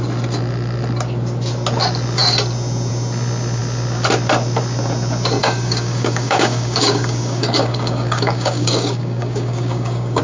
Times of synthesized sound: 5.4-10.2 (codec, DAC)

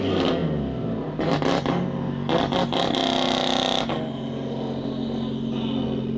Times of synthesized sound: none

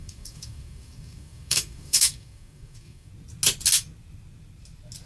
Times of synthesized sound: 0.0-3.1 (codec, DAC)

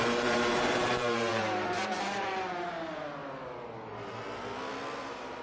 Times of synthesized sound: 0.0-3.2 (vocoder, BigVGAN v2); 5.0-5.4